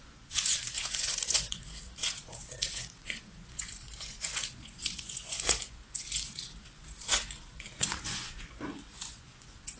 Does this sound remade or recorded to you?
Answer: remade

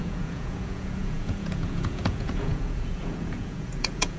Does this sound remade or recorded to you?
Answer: remade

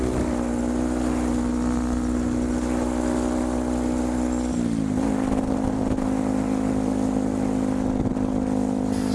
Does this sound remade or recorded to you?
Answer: recorded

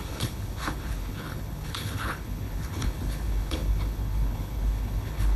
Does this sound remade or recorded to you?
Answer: remade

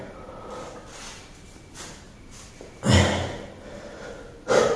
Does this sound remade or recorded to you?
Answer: recorded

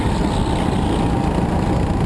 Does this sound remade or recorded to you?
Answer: recorded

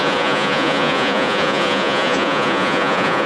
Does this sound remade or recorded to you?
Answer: remade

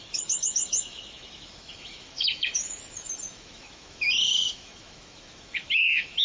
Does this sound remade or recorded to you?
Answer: remade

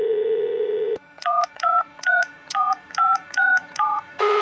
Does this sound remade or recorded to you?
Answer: remade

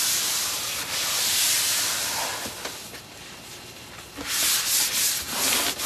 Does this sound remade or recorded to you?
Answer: recorded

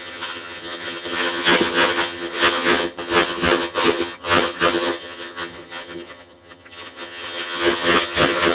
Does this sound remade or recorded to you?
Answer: remade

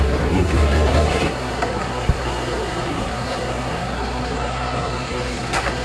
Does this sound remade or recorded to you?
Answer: remade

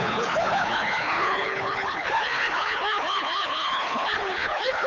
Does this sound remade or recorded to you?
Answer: remade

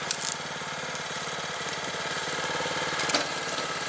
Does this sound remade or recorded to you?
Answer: recorded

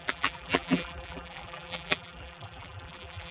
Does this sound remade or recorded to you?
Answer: remade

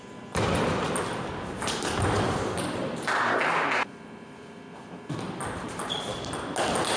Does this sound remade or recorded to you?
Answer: recorded